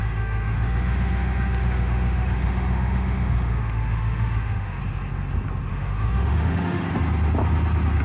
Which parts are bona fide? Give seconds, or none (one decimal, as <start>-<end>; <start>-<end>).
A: 4.8-5.7; 6.9-8.0